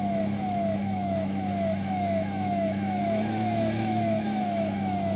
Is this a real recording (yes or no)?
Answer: no